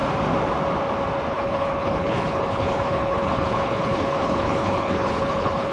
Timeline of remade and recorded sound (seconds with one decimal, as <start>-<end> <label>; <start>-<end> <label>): 0.0-1.3 recorded; 1.3-5.7 remade